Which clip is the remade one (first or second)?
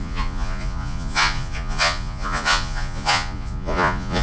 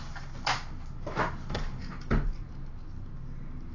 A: first